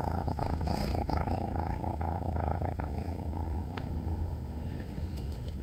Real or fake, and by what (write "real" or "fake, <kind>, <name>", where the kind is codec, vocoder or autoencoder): fake, autoencoder, DAC-VAE